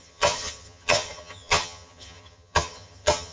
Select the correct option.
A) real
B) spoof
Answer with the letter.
B